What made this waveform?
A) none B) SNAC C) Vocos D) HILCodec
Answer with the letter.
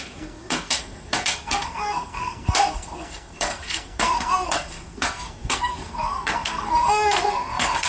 B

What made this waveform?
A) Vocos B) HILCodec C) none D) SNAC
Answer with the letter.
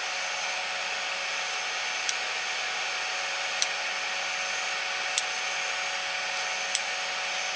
C